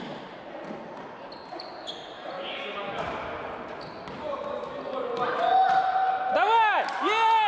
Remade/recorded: recorded